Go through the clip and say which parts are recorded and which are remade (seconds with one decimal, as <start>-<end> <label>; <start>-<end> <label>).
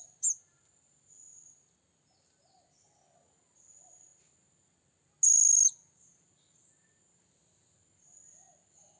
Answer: 0.0-9.0 recorded